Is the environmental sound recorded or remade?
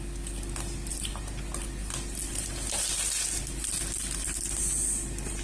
recorded